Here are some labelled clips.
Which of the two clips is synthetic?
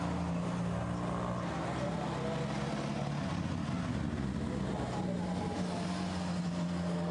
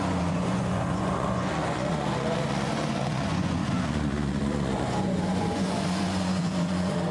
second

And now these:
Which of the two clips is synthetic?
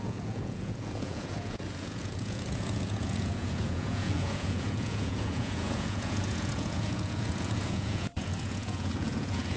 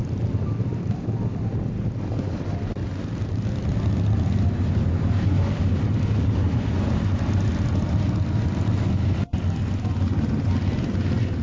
first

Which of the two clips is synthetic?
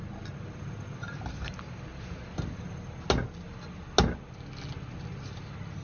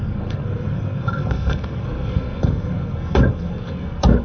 second